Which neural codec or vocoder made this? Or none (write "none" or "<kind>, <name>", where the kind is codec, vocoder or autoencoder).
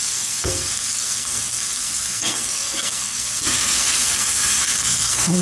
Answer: codec, SNAC